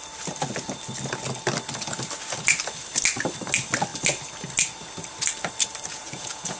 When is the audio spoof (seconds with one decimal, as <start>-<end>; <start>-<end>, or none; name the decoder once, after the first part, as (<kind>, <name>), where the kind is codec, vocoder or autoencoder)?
5.9-6.6 (vocoder, Vocos)